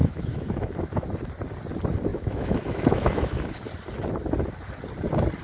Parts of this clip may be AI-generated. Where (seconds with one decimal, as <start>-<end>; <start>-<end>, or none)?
0.0-1.1; 2.1-3.5